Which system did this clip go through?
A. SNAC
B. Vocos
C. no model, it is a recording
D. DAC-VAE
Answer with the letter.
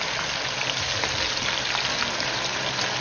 C